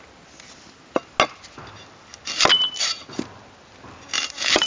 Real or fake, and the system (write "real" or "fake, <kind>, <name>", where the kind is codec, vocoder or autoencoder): real